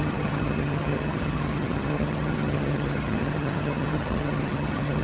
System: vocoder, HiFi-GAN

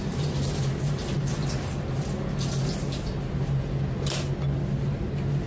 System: none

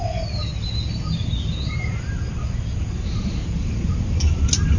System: none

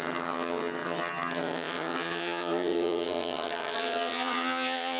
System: vocoder, HiFi-GAN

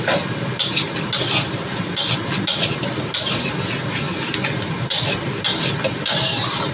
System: none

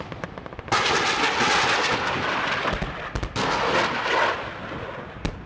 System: none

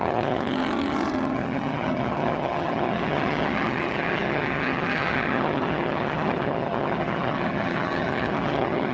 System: vocoder, HiFi-GAN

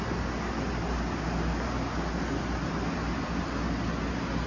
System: none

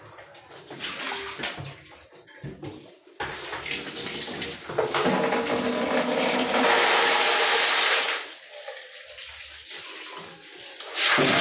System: none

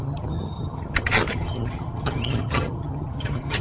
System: vocoder, HiFi-GAN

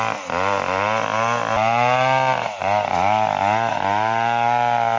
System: none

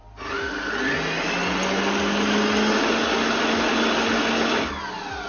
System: none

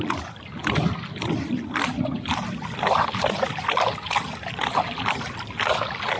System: none